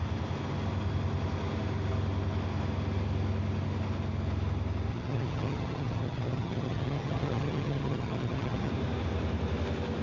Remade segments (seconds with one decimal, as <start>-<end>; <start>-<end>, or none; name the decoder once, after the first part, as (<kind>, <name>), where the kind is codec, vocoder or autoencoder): 4.9-8.7 (vocoder, HiFi-GAN)